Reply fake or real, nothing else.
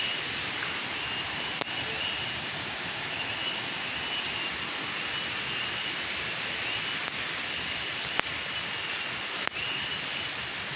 real